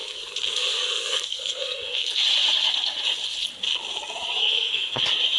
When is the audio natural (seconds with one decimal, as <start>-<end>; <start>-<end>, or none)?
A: 2.2-4.4; 5.0-5.4